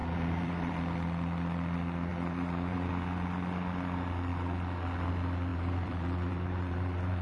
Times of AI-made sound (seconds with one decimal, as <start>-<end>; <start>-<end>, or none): 0.0-0.7; 2.1-2.9; 5.5-7.2